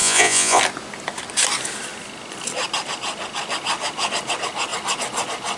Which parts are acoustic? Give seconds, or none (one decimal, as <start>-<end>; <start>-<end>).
0.6-5.6